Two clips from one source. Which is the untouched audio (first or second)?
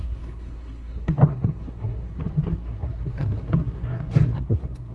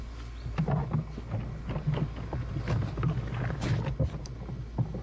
second